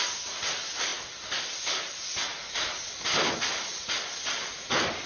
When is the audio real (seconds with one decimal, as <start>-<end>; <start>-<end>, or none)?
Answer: 0.0-5.1